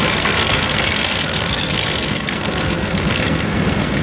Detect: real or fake fake